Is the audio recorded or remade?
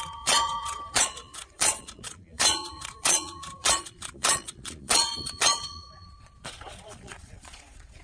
remade